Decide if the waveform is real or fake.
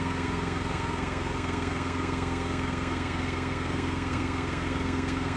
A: fake